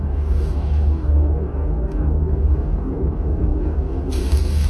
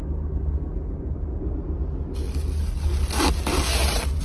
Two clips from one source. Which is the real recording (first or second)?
second